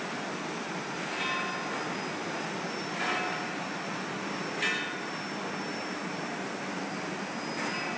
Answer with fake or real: real